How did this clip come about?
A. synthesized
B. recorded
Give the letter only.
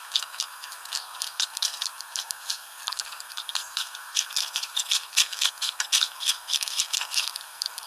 A